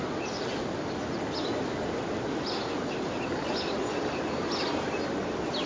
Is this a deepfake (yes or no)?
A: no